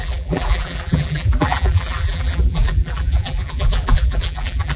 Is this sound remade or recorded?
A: remade